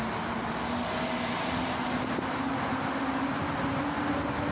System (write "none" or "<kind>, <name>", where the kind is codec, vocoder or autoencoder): none